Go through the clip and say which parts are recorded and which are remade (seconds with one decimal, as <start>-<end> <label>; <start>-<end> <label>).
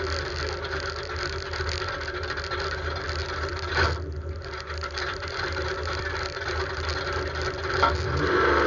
0.0-8.7 recorded